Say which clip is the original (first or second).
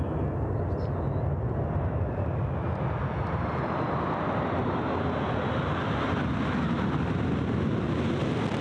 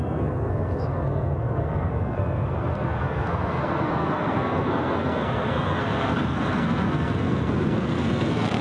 first